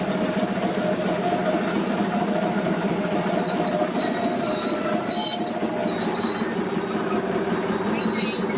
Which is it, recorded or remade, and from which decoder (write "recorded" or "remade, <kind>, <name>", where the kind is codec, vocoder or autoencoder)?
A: recorded